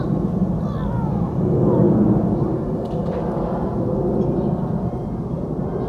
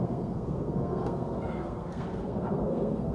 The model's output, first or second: second